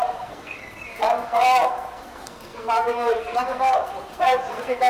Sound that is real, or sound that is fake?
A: fake